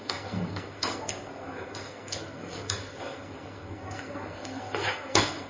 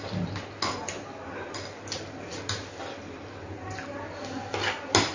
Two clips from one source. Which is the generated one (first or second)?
first